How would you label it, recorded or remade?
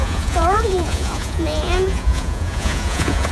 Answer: remade